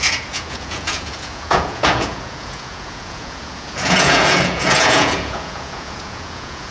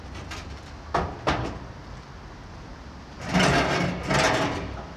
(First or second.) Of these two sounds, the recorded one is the second